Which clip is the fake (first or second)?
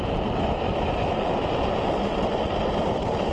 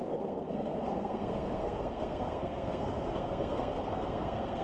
second